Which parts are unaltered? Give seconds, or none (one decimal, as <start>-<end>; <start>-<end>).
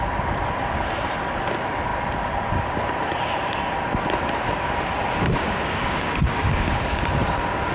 0.0-5.4; 7.0-7.7